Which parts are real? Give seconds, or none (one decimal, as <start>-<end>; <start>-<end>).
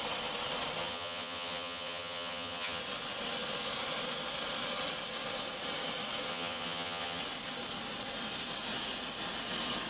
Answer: 0.0-0.8; 2.8-6.3; 7.2-9.9